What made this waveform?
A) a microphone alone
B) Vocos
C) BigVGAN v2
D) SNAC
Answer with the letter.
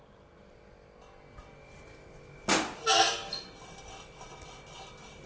A